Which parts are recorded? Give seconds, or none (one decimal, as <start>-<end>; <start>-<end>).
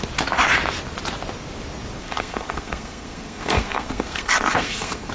0.0-2.0